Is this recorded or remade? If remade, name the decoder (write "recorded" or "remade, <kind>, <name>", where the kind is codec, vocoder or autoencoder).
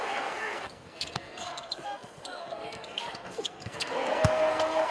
remade, codec, SNAC